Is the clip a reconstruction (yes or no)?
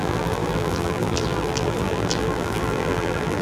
yes